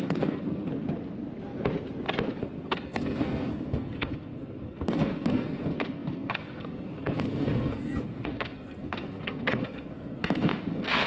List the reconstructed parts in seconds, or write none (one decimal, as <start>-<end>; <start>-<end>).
0.0-0.7; 2.4-11.1